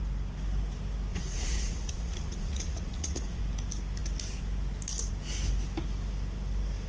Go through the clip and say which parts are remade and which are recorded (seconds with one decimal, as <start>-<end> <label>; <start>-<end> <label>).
0.0-1.1 recorded; 1.1-3.4 remade; 3.4-6.9 recorded

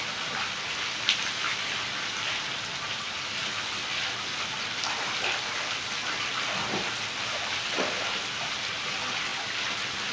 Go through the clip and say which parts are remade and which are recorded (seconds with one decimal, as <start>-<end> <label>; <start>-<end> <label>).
0.0-10.1 recorded